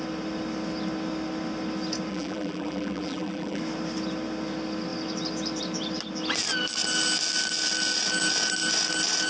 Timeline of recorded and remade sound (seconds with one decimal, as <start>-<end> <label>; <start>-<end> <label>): 0.0-2.1 recorded; 2.1-3.6 remade; 3.6-9.3 recorded